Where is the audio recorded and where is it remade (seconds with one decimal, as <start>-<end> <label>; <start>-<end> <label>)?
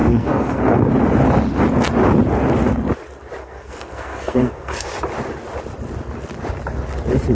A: 0.0-0.9 remade; 0.9-3.4 recorded; 3.4-4.9 remade; 4.9-7.3 recorded